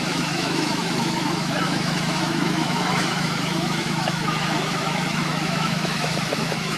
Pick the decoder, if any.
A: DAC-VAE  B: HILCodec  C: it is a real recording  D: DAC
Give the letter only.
A